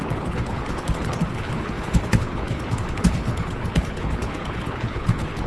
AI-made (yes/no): yes